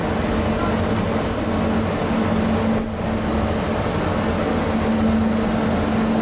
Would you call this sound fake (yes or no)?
no